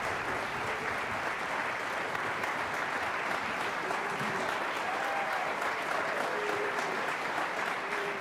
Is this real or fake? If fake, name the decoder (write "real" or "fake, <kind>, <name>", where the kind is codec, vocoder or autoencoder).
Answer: fake, vocoder, BigVGAN v2